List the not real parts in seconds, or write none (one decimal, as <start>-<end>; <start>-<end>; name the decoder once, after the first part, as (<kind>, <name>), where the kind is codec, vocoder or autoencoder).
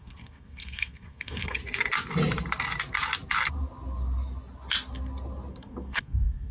0.0-1.6 (codec, SNAC); 5.5-6.5